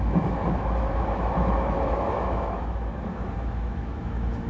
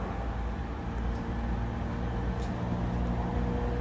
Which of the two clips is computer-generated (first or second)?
first